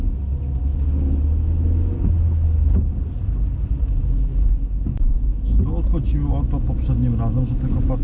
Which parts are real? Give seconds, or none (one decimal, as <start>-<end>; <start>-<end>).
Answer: 0.0-4.9; 5.6-8.0